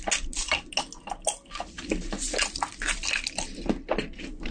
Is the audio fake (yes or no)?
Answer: no